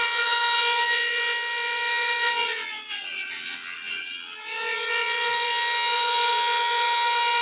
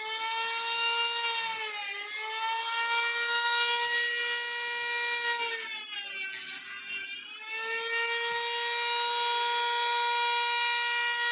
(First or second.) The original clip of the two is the second